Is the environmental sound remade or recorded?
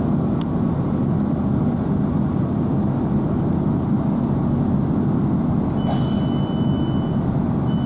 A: recorded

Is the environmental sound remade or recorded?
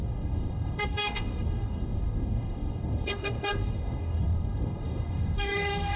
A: remade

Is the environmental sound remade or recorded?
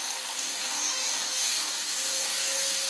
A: remade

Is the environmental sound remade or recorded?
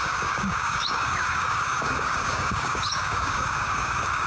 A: remade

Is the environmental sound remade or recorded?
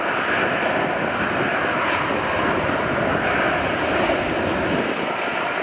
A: recorded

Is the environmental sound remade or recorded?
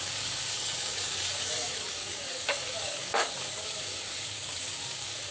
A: remade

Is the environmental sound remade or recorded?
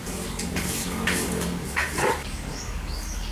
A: remade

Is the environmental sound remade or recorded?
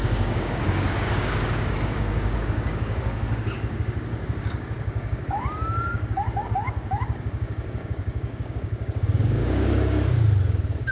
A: remade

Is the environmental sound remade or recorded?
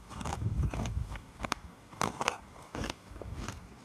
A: remade